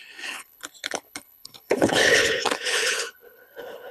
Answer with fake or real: fake